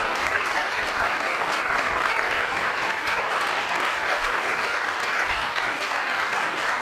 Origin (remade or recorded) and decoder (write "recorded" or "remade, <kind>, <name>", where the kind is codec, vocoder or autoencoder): remade, codec, DAC